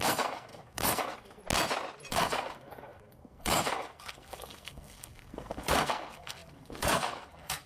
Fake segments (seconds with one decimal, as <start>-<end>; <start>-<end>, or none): 0.0-1.4; 2.1-7.7